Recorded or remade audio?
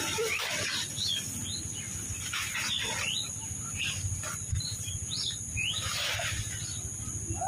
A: recorded